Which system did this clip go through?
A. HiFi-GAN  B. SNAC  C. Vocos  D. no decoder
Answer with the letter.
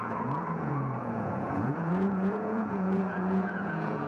C